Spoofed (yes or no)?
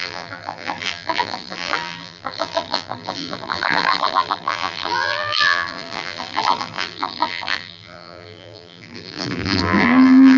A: yes